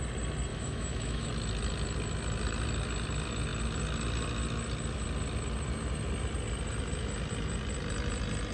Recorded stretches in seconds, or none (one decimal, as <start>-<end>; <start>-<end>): 0.0-0.5; 1.3-8.5

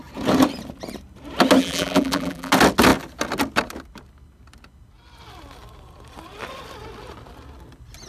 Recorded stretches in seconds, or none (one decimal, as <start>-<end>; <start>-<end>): 0.0-1.6; 2.5-8.1

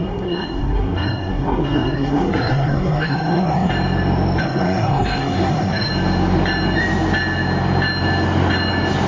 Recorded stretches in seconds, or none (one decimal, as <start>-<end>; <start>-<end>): 3.7-4.4; 5.9-9.1

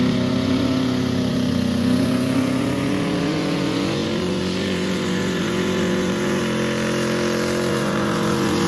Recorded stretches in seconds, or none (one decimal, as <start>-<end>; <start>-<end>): 6.4-7.7

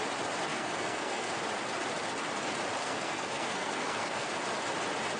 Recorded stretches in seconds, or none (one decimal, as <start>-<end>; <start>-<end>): 0.0-0.5; 1.3-2.8; 4.3-5.2

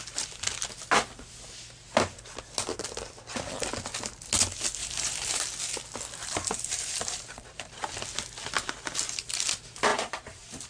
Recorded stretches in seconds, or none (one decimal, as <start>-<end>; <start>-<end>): 0.0-4.8; 5.4-6.2; 7.9-9.9

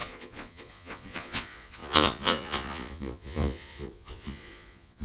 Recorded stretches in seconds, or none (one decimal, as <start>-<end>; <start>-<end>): none

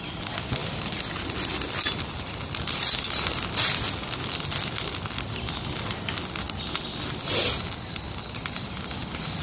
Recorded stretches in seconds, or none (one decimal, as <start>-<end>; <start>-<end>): 0.0-0.6; 1.7-9.4